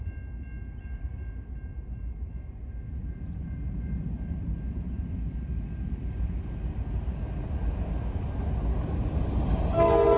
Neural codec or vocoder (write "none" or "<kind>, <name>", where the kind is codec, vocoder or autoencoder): none